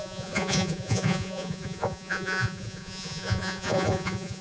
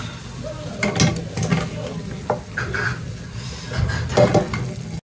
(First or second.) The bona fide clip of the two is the second